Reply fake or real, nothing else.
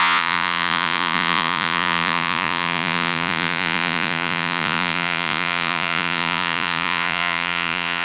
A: fake